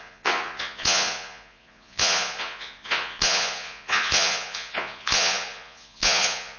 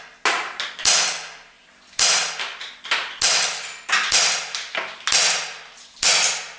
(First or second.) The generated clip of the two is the first